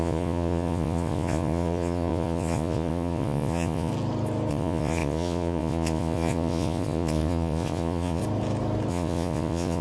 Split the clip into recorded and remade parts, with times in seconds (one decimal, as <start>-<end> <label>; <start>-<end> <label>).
0.0-3.9 remade; 3.9-4.5 recorded; 4.5-8.2 remade; 8.2-8.9 recorded; 8.9-9.8 remade